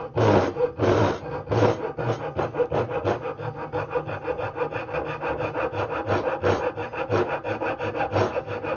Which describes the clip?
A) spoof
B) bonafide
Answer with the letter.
B